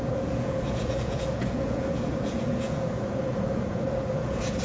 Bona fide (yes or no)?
no